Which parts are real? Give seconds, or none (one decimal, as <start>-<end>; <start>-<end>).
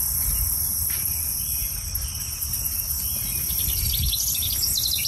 0.0-5.1